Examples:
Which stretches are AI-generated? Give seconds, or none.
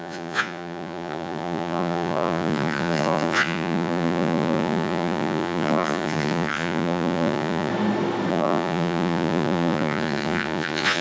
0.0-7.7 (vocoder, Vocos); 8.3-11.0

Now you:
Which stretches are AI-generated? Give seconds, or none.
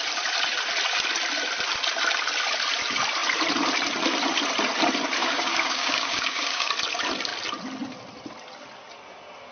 5.2-6.7 (codec, DAC)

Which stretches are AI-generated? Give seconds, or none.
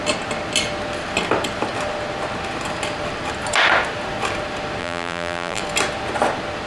4.8-5.6 (vocoder, BigVGAN v2)